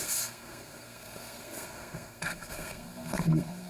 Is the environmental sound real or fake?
fake